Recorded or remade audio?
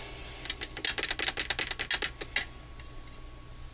recorded